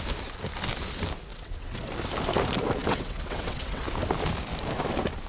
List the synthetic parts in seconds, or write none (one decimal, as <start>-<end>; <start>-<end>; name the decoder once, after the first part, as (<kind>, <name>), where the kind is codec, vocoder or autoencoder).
1.3-1.9 (vocoder, WaveNeXt); 2.8-3.8